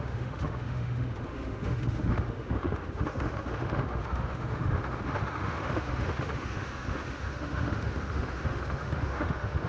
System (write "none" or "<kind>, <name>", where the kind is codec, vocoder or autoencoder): autoencoder, DAC-VAE